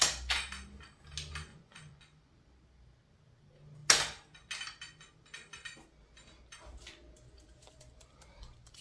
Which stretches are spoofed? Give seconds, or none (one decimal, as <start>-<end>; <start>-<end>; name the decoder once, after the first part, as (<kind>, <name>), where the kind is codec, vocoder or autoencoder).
1.5-2.3 (vocoder, Vocos)